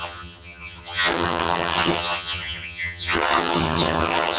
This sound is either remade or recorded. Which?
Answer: remade